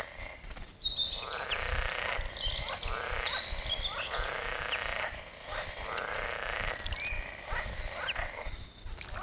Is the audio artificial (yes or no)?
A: no